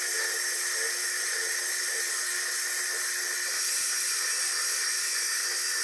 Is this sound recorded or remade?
recorded